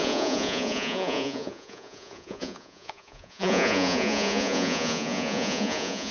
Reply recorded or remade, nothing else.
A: remade